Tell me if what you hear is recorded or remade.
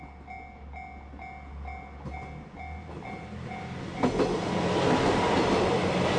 recorded